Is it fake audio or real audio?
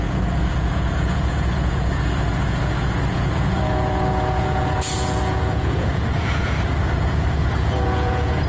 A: fake